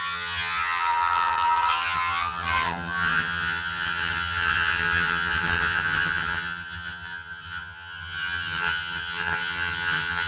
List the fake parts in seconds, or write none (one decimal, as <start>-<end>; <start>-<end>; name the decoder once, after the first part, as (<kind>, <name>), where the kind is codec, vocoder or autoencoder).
0.0-10.3 (vocoder, HiFi-GAN)